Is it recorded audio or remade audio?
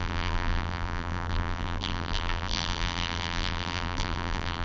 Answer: remade